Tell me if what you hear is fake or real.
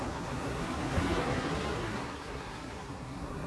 fake